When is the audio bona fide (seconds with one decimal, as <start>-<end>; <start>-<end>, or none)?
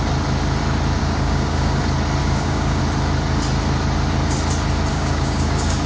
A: 0.0-1.0; 1.8-2.2; 2.8-4.9